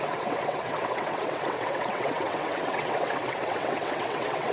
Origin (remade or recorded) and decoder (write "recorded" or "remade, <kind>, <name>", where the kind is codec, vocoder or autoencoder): remade, vocoder, WaveNeXt